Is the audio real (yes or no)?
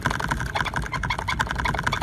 yes